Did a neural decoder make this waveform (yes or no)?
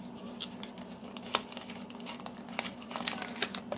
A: no